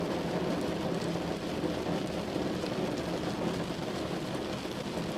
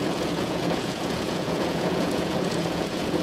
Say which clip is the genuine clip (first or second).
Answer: first